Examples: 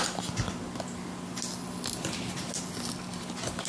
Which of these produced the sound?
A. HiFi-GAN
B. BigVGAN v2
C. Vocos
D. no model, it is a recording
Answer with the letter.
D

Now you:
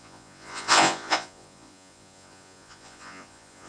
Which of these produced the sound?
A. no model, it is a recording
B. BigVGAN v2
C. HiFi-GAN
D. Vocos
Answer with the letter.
D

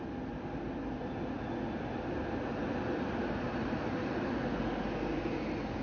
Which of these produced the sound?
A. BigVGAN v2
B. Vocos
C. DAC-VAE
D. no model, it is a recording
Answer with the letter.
D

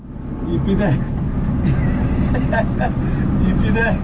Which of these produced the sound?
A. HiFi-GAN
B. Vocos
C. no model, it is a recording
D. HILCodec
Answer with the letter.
C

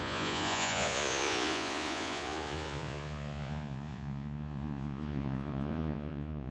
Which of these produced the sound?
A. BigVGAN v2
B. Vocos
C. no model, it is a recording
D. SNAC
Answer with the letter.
B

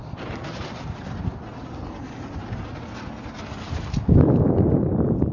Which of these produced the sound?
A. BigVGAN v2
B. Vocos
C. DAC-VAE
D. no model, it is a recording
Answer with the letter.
D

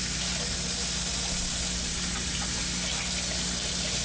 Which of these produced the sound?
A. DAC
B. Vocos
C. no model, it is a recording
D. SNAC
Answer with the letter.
C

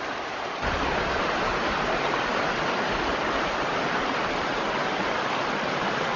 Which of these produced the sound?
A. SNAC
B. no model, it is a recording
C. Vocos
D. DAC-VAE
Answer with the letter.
B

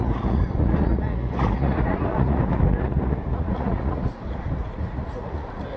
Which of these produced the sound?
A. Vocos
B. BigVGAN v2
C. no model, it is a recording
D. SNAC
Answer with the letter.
A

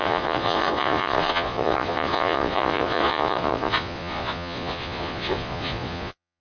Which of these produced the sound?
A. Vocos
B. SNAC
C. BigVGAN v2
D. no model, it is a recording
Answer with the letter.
A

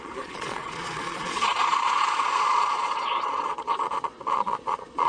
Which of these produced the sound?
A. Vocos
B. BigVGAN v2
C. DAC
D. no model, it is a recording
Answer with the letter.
A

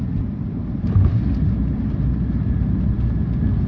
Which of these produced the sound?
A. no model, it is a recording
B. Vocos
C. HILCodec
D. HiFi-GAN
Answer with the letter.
A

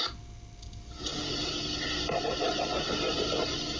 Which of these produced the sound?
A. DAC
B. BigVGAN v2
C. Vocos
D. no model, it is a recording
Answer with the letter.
D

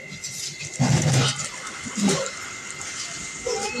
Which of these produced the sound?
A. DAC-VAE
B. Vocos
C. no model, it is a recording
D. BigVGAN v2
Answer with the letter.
C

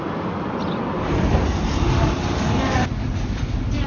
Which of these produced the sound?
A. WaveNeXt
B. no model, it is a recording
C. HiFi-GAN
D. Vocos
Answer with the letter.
B